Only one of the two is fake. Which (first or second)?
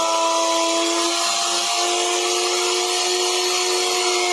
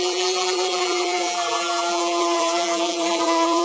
second